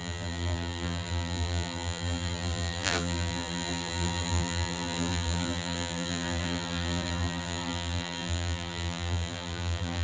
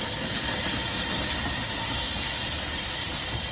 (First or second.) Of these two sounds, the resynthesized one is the first